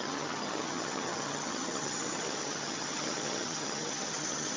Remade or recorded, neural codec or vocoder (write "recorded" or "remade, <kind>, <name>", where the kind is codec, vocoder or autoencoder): remade, vocoder, HiFi-GAN